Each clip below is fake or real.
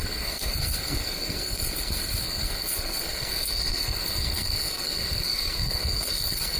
fake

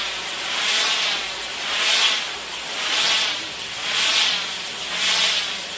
real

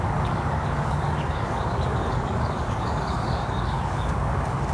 fake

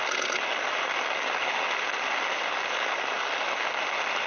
real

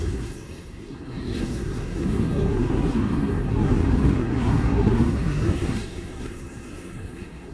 fake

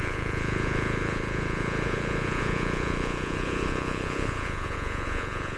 fake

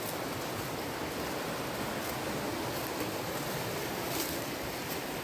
real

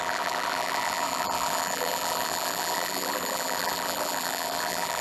fake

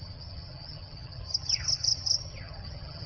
fake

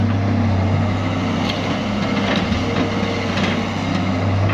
real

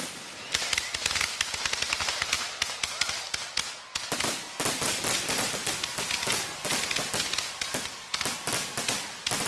real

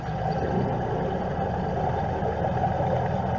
real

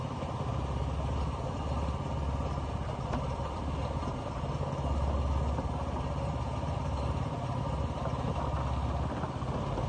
real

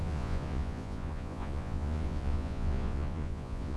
fake